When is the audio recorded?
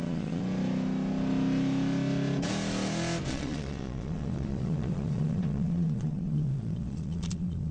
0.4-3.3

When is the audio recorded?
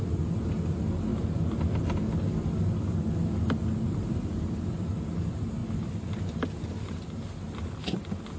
0.0-8.4